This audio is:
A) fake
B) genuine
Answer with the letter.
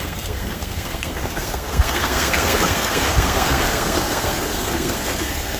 A